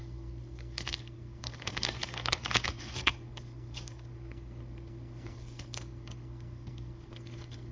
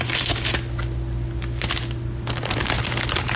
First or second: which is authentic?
second